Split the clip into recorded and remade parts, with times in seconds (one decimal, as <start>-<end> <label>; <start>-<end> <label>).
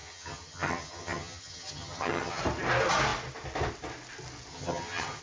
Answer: 0.0-2.4 remade; 2.4-4.5 recorded; 4.5-5.2 remade